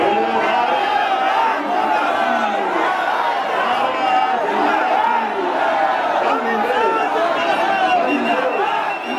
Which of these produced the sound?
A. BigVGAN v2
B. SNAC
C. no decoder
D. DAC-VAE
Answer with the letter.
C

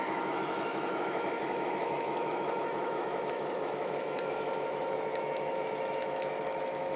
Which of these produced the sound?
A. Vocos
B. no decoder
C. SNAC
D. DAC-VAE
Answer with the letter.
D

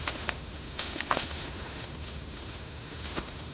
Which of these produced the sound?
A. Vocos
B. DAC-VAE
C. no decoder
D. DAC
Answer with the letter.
B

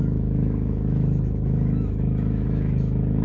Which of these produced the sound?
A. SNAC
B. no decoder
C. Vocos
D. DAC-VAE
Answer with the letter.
D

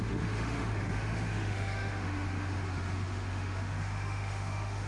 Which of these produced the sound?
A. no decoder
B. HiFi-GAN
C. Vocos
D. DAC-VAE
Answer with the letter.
D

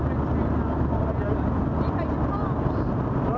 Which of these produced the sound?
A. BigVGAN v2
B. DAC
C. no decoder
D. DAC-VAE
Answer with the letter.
C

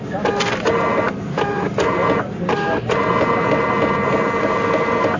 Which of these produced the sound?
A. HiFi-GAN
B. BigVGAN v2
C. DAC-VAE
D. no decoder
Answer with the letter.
D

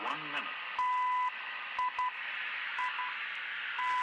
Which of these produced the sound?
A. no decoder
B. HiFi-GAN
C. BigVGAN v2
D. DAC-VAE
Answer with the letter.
A